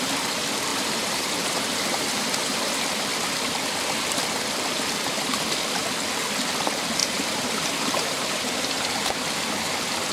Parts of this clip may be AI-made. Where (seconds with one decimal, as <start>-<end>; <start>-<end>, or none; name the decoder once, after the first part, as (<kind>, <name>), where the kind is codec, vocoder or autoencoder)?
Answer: 0.7-2.7 (vocoder, BigVGAN v2); 7.0-9.1